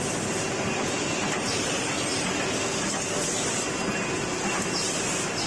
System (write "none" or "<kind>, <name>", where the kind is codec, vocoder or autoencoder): none